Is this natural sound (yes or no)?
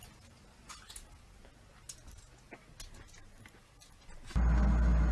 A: yes